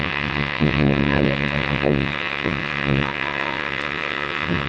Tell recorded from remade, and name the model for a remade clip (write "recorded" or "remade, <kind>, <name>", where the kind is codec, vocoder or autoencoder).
remade, vocoder, WaveNeXt